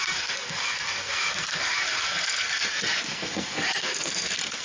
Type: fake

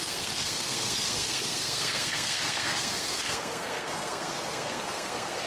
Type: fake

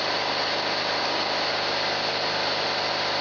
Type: real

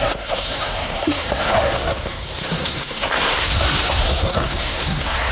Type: fake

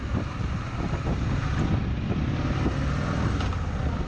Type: real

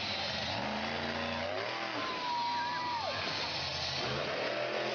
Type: real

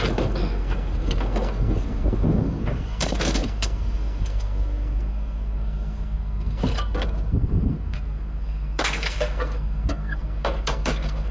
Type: fake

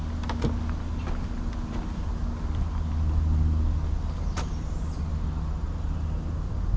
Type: real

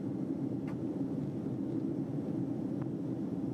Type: real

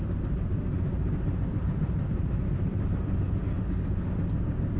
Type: real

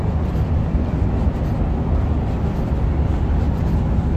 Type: real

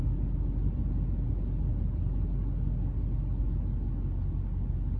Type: real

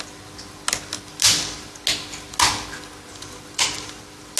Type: real